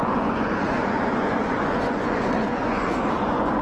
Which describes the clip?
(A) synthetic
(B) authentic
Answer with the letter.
A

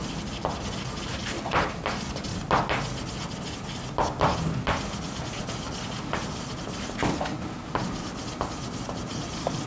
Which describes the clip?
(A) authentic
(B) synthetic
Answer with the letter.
A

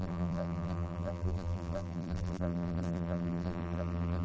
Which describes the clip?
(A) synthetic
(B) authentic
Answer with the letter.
A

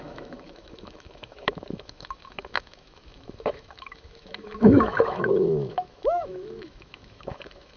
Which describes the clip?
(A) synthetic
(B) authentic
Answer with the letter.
A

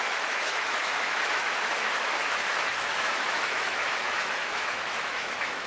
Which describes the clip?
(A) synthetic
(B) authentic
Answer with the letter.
A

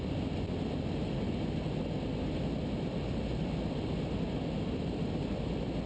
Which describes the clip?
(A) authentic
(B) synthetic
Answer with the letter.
A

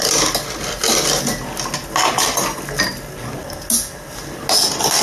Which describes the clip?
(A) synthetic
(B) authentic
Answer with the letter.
B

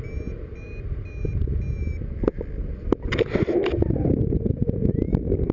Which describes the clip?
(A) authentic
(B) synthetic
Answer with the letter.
A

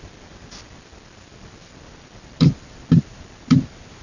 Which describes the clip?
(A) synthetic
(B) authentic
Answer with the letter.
B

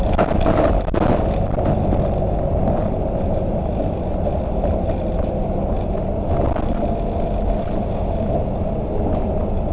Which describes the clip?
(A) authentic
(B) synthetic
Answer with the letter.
A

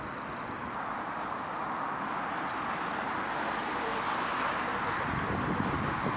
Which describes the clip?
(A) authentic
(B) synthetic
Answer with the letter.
A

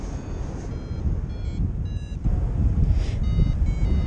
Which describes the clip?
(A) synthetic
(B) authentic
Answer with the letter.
B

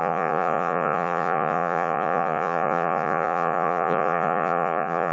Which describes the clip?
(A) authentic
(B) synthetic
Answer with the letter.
B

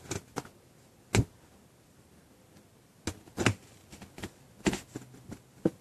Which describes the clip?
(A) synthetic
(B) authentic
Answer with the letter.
B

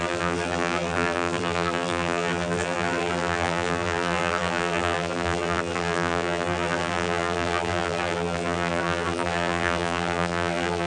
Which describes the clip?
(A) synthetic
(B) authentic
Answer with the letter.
A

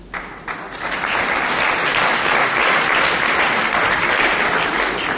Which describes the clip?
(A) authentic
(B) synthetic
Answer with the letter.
A